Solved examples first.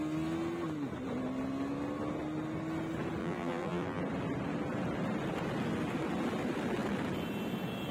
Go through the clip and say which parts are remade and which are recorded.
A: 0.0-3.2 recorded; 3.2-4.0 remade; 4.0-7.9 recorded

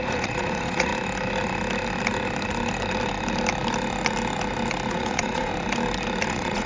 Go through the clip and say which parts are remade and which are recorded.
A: 0.0-0.9 remade; 0.9-4.9 recorded; 4.9-5.5 remade; 5.5-6.3 recorded; 6.3-6.7 remade

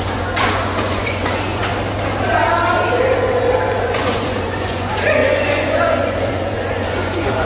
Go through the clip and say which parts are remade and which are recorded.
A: 0.0-1.7 remade; 1.7-3.8 recorded; 3.8-7.5 remade

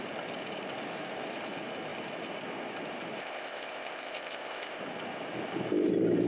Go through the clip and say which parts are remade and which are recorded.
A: 0.0-3.2 recorded; 3.2-4.8 remade; 4.8-6.3 recorded

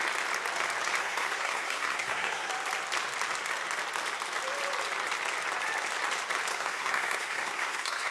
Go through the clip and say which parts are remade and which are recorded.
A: 0.0-1.0 recorded; 1.0-2.5 remade; 2.5-6.5 recorded; 6.5-8.1 remade